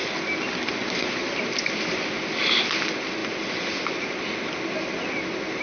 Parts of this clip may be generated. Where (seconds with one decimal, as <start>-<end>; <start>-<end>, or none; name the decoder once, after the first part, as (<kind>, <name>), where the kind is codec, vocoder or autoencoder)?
none